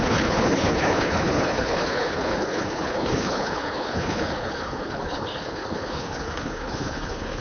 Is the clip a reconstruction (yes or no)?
yes